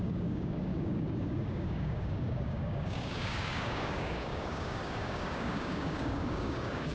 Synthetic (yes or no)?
yes